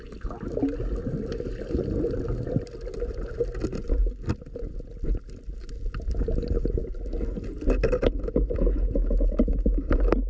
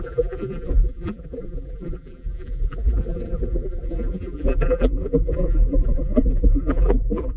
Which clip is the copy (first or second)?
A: second